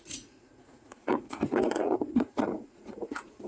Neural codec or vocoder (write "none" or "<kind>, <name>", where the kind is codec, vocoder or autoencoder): vocoder, Vocos